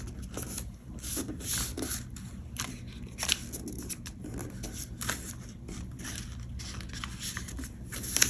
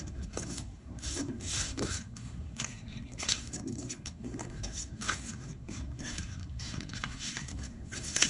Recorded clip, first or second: first